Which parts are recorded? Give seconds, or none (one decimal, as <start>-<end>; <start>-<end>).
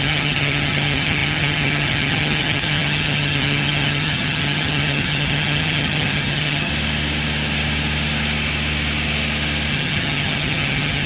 6.7-9.7